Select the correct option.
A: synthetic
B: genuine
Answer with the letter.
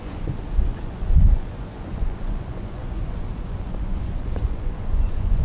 A